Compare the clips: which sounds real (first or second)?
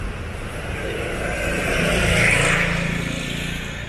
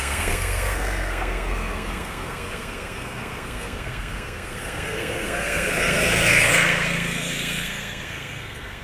first